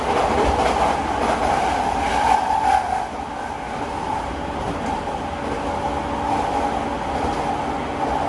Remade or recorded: recorded